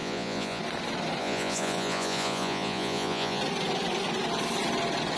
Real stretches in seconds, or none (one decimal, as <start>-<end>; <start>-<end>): 0.6-1.2; 3.4-5.2